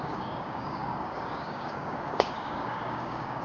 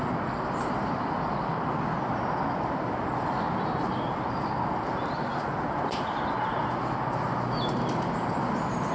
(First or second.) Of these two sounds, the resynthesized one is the first